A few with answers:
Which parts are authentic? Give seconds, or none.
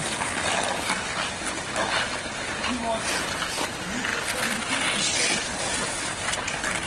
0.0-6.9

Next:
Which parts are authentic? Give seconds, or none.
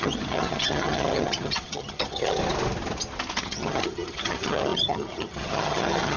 2.4-3.4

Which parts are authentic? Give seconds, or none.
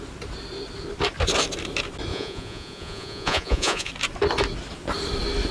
0.0-2.1; 3.9-5.5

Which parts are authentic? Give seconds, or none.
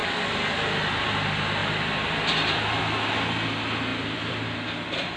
0.0-1.6; 2.8-3.9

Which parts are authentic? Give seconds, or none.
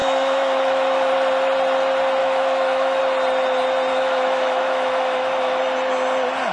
1.1-2.2; 3.0-3.9; 5.6-6.5